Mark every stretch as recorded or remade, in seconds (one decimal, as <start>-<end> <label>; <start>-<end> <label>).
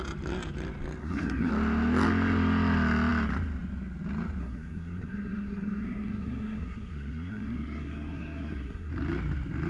0.0-1.0 recorded; 1.0-1.5 remade; 1.5-4.4 recorded; 4.4-8.9 remade; 8.9-9.7 recorded